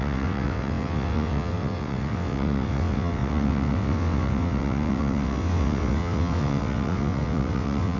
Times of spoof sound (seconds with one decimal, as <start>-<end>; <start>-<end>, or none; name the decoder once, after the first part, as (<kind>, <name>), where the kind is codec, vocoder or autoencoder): 0.0-8.0 (vocoder, WaveNeXt)